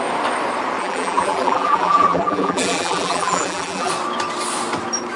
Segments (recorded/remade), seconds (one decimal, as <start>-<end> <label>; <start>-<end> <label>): 0.0-0.8 recorded; 0.8-3.9 remade; 3.9-5.2 recorded